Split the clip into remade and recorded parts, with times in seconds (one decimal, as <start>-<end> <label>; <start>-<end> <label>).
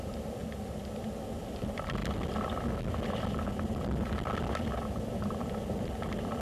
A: 0.0-0.4 remade; 0.4-1.4 recorded; 1.4-6.4 remade